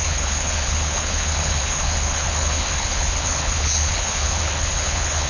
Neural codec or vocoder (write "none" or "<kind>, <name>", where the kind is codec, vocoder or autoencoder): codec, HILCodec